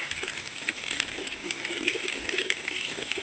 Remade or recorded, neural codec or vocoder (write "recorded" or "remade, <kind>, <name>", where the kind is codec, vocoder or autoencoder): remade, codec, DAC